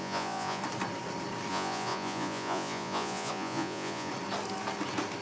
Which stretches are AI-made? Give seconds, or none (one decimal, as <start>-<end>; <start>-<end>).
0.0-0.6; 1.5-4.1